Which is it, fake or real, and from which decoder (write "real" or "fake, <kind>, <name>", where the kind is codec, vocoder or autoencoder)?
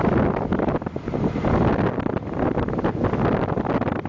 real